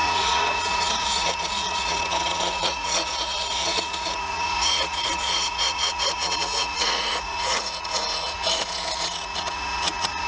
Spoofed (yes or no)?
yes